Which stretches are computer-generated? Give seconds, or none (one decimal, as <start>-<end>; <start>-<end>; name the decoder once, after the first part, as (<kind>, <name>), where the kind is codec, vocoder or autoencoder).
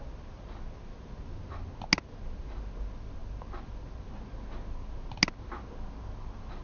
none